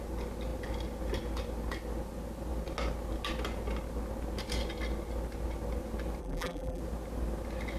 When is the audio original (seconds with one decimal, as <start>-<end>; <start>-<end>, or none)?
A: 0.0-6.2; 6.8-7.8